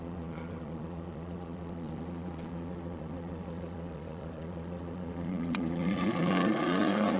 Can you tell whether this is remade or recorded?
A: remade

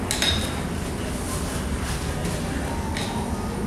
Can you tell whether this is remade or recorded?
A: recorded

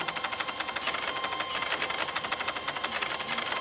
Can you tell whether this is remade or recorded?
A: recorded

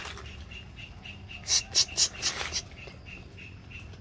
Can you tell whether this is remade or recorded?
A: recorded